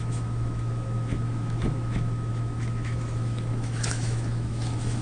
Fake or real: fake